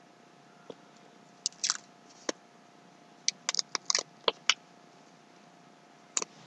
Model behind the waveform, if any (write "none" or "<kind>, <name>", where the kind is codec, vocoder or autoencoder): none